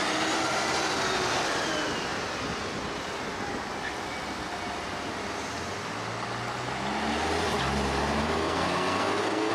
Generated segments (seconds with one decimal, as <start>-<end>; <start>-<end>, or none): 8.2-9.5